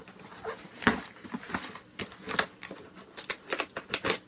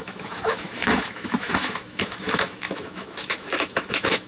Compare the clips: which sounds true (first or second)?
first